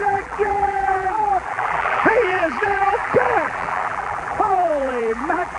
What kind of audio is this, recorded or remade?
remade